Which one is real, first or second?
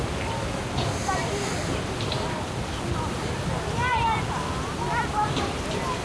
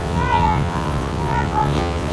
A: first